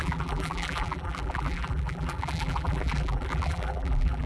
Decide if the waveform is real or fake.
fake